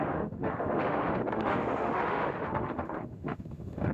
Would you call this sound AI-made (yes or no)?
yes